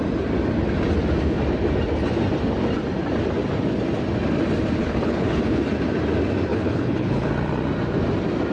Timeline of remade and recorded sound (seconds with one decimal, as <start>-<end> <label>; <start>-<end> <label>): 0.0-4.8 recorded; 4.8-5.4 remade; 5.4-6.5 recorded; 6.5-7.3 remade; 7.3-8.5 recorded